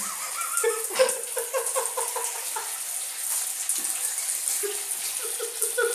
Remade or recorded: recorded